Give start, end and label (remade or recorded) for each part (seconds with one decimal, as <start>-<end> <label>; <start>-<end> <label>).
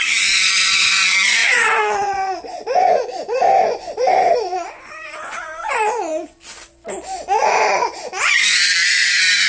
0.0-6.1 remade; 6.1-7.2 recorded; 7.2-9.5 remade